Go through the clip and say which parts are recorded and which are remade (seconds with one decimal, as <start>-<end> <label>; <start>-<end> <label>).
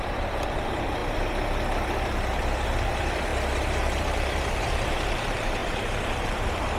0.0-1.0 remade; 1.0-2.0 recorded; 2.0-3.3 remade; 3.3-4.0 recorded; 4.0-6.8 remade